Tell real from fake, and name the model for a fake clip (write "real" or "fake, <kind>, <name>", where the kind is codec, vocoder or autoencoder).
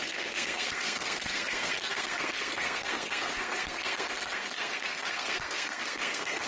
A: fake, codec, SNAC